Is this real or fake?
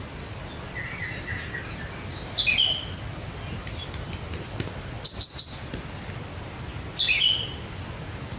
real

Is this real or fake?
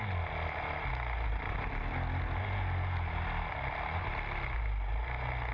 real